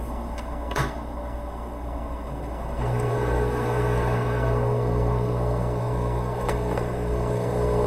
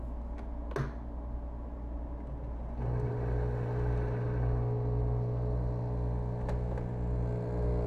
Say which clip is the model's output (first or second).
first